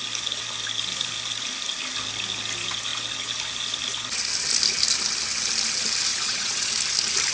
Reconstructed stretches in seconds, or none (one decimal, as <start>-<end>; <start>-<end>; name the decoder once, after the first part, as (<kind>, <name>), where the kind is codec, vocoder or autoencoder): 6.1-6.7 (vocoder, Vocos)